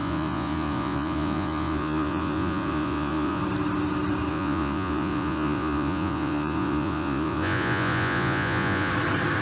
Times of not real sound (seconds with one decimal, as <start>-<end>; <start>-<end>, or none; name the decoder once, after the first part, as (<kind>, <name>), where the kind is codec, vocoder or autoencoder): 0.0-3.4 (vocoder, Vocos); 4.3-8.9